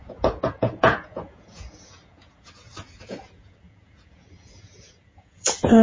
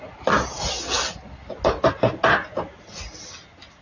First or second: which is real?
second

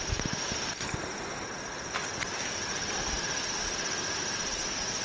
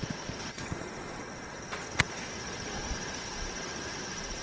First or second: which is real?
first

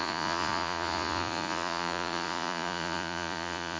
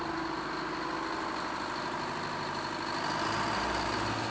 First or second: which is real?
second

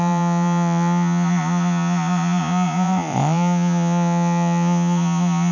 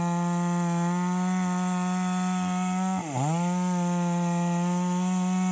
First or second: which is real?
second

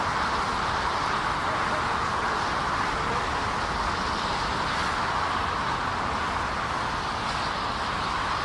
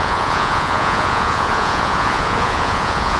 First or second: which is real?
first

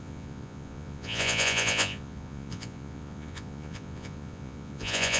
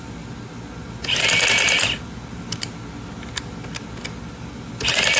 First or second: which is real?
second